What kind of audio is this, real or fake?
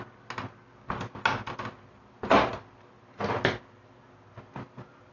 real